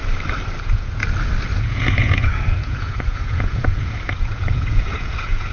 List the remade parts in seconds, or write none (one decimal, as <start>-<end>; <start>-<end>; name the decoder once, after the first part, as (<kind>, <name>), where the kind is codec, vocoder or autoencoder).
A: 0.6-1.0 (vocoder, Vocos); 1.6-5.5

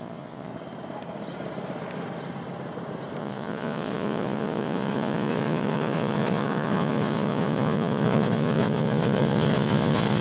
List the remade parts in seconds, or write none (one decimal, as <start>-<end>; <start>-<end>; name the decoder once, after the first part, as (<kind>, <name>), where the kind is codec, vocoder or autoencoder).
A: 0.0-0.5 (vocoder, Vocos); 3.2-10.2

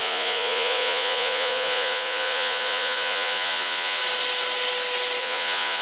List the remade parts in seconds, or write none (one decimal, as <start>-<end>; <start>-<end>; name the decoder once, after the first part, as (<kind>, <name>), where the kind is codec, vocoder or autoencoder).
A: 0.0-4.0 (vocoder, Vocos); 5.2-5.8

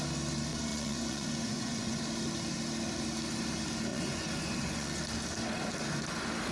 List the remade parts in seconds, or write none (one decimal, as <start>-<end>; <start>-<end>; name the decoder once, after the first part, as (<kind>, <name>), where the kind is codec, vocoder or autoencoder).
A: 0.7-2.0 (vocoder, Vocos); 3.9-5.0

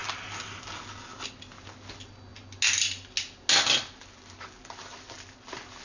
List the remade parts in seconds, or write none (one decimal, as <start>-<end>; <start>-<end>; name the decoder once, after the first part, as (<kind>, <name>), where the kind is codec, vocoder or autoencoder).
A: none

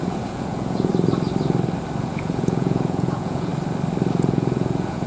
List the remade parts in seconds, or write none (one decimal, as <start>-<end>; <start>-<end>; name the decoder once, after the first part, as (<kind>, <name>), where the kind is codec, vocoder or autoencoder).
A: 0.0-0.9 (vocoder, Vocos); 2.0-3.5; 4.1-5.1

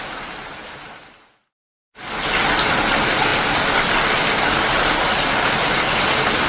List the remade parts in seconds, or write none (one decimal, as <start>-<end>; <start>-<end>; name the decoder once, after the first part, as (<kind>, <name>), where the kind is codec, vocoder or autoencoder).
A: none